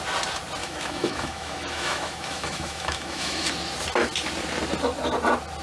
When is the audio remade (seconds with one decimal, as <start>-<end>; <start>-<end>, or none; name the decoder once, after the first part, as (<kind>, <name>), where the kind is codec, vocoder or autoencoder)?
0.6-3.5 (autoencoder, DAC-VAE)